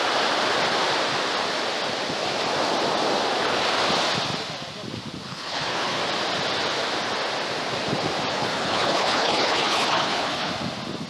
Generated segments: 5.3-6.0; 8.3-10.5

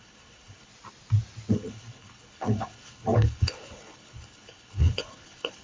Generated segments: 0.0-0.7; 1.5-5.6

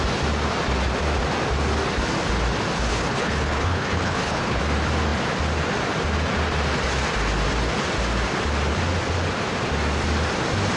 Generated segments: 2.9-4.6

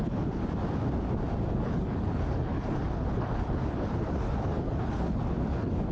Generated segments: 0.0-0.4; 1.5-5.9

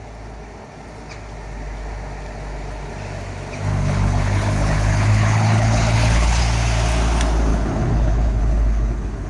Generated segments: 3.7-6.4; 7.5-9.3

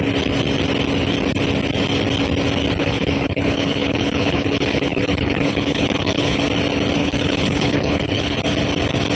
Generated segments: 2.8-6.4; 7.0-8.4

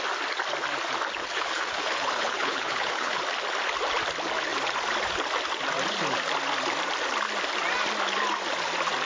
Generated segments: 1.2-3.2

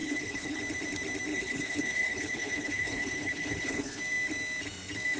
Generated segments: 0.0-0.6; 1.3-4.0